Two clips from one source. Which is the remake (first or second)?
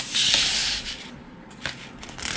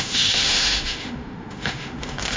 second